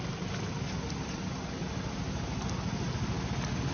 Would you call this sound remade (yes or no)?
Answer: no